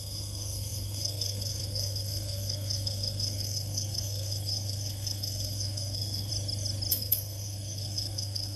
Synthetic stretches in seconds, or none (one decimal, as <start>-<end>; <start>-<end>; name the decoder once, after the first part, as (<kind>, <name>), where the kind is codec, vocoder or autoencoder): 0.0-6.3 (codec, SNAC); 6.9-8.6